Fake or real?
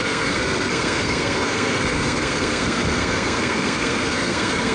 fake